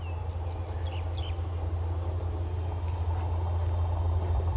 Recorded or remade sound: recorded